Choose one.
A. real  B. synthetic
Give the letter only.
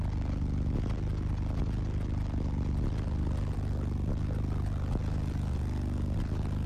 A